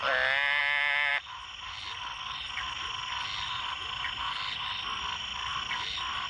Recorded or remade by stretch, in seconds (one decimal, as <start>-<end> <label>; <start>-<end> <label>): 0.0-6.3 recorded